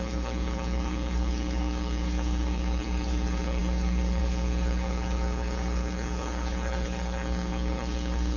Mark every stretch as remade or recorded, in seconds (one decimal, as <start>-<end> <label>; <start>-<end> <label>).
0.0-8.4 remade